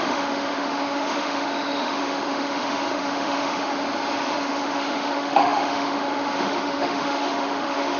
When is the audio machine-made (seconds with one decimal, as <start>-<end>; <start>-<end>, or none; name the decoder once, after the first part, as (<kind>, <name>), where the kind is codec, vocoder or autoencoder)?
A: 0.0-3.7 (autoencoder, DAC-VAE); 4.3-8.0